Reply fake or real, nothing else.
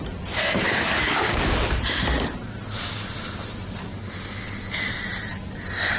real